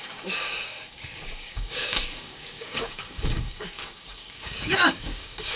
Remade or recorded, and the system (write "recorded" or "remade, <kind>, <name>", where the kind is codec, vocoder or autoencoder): remade, codec, DAC